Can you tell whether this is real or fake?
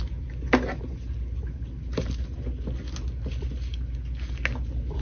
real